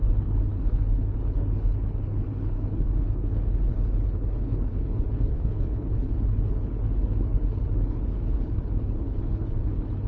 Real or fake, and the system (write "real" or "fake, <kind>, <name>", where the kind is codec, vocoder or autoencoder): fake, codec, HILCodec